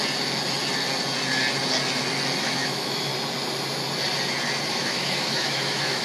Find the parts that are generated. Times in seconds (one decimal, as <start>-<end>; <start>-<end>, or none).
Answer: 2.4-3.1; 4.7-6.0